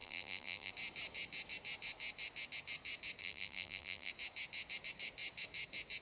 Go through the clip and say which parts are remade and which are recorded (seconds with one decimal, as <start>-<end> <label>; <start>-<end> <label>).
0.0-0.7 remade; 0.7-3.2 recorded; 3.2-4.1 remade; 4.1-6.0 recorded